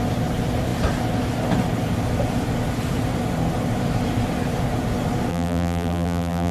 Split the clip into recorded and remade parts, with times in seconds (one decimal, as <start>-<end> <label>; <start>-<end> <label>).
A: 0.0-5.3 recorded; 5.3-6.5 remade